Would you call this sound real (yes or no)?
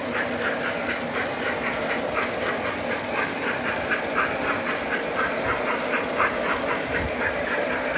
yes